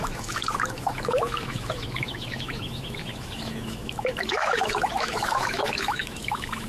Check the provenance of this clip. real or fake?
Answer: fake